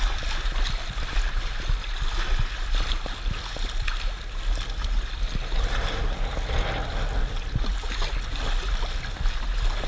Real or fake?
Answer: real